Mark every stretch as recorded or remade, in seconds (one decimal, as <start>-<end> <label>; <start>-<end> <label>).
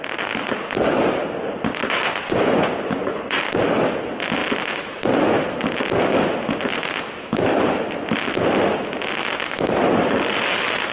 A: 0.0-1.8 recorded; 1.8-3.4 remade; 3.4-10.9 recorded